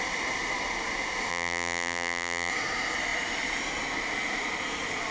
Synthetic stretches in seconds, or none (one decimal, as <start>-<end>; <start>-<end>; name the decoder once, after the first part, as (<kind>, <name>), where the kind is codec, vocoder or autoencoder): 1.3-2.5 (vocoder, BigVGAN v2)